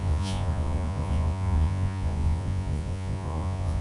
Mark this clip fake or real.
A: fake